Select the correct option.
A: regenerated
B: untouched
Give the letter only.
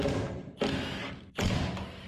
B